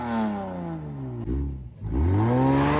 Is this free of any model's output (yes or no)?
yes